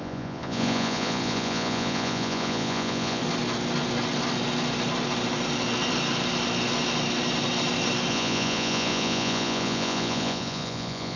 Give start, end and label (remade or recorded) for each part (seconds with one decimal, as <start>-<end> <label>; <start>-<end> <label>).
0.0-3.2 remade; 3.2-8.1 recorded; 8.1-11.2 remade